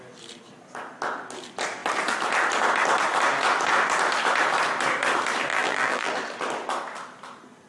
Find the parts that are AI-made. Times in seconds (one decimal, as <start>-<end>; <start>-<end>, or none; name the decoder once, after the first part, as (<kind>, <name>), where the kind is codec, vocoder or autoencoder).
5.5-6.1 (vocoder, BigVGAN v2)